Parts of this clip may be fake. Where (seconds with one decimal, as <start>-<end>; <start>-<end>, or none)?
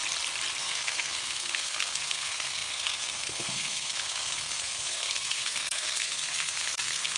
0.6-7.2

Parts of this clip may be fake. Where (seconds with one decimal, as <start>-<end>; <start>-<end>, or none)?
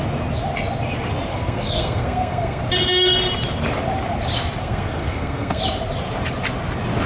1.3-2.6; 4.6-5.6